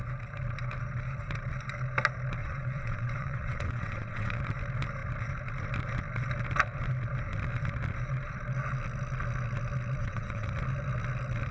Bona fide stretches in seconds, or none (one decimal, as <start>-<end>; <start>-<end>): 0.0-2.4; 4.4-10.0; 10.5-11.5